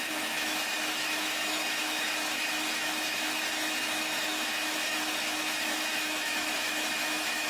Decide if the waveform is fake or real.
fake